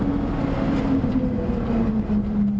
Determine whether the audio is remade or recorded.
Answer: recorded